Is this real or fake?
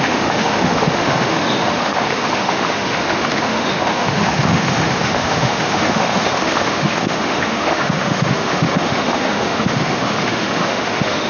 fake